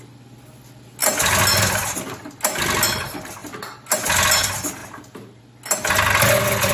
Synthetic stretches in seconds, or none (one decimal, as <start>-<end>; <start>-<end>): 4.8-5.4